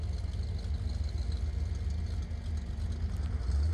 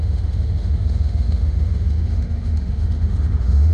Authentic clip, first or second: first